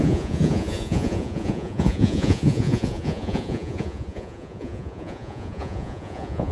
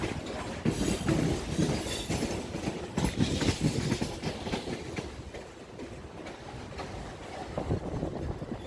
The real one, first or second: second